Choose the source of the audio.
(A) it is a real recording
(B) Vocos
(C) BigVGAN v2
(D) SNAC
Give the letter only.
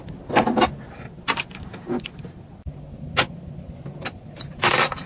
A